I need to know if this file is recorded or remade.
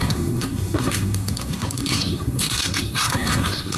remade